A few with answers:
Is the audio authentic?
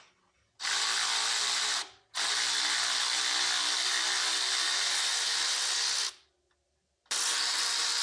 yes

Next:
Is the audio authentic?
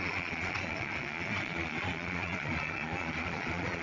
no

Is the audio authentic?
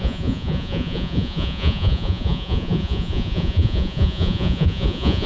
no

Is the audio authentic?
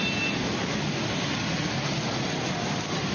yes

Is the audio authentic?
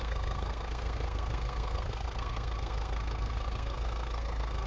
no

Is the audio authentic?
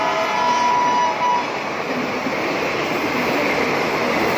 yes